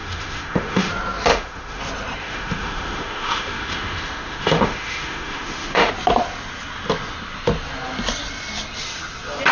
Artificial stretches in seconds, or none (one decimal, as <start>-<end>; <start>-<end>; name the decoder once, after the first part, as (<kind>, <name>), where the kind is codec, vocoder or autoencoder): 0.0-0.9 (autoencoder, DAC-VAE); 1.3-1.8; 2.2-5.9